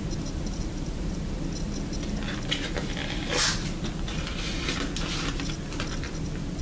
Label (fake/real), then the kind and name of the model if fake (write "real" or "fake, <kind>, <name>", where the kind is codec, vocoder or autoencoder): real